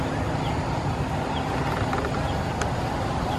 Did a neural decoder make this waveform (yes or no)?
no